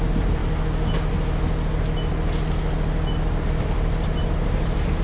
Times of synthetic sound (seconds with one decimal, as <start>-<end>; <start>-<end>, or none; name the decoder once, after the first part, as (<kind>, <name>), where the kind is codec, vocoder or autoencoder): 0.0-0.4 (vocoder, BigVGAN v2); 3.4-5.0